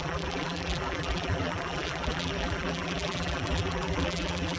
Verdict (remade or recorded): remade